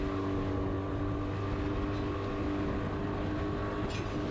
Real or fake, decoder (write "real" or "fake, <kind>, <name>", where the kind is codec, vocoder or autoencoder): real